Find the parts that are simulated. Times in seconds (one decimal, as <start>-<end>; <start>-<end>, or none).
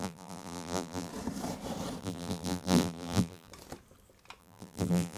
0.0-1.1; 2.0-3.5; 4.4-5.2